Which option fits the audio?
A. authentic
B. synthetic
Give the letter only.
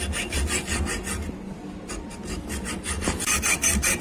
A